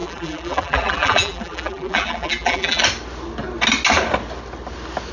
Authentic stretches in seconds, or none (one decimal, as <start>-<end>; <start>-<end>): 2.8-5.1